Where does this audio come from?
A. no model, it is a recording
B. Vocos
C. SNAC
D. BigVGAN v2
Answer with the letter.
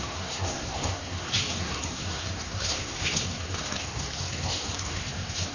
C